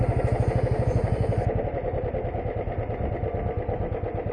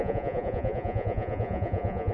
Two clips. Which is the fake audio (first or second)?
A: second